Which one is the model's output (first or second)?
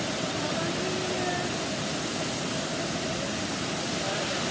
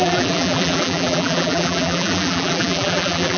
second